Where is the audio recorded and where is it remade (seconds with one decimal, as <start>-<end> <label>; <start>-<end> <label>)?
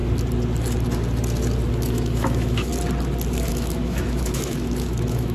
0.0-1.7 recorded; 1.7-2.7 remade; 2.7-3.5 recorded; 3.5-5.3 remade